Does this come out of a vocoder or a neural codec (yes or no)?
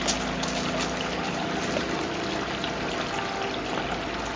no